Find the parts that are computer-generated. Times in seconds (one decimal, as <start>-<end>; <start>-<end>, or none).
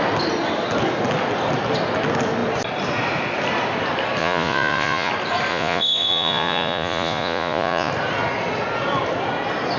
4.2-5.1; 5.5-7.9